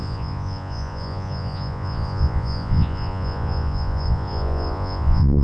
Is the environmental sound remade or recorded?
remade